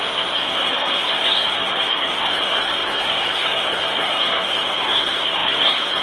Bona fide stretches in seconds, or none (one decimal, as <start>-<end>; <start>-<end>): none